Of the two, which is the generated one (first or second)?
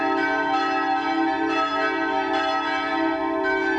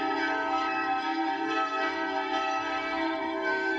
second